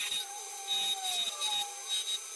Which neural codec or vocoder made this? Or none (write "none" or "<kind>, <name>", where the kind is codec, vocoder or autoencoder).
none